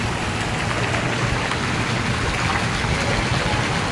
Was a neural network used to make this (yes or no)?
no